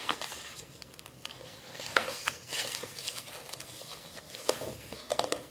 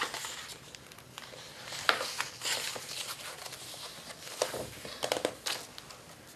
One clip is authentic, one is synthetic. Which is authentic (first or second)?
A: second